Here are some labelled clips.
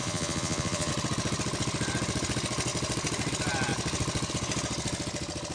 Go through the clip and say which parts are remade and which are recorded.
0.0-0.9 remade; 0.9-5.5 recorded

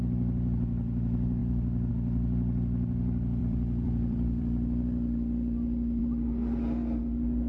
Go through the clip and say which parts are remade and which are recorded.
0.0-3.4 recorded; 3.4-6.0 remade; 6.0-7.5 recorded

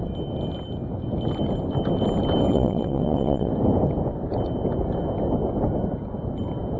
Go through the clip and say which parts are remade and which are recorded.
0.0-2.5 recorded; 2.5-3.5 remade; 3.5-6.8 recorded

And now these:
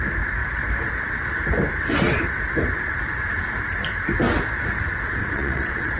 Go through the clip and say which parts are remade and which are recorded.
0.0-5.2 recorded; 5.2-6.0 remade